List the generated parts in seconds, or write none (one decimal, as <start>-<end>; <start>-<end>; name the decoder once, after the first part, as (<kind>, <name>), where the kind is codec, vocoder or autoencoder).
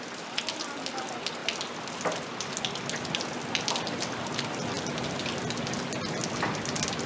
none